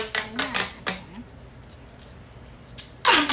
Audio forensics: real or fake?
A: real